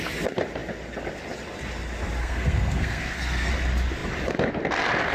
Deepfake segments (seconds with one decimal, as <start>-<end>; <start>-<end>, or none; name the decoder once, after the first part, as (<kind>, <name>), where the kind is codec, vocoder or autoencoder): 2.2-3.5 (codec, SNAC)